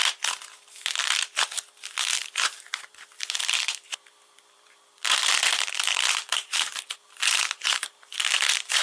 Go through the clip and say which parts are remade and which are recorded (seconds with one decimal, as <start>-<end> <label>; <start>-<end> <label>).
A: 0.0-5.3 remade; 5.3-6.3 recorded; 6.3-7.8 remade; 7.8-8.8 recorded